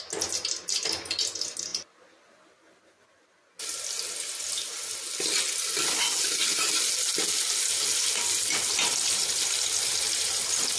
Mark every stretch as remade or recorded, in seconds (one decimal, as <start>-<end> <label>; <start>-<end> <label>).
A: 0.0-10.8 recorded